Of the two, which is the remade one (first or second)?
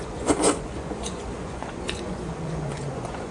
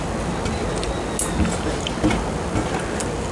first